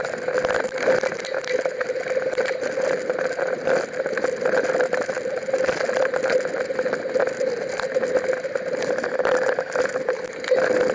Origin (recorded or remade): recorded